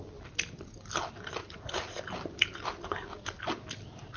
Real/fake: real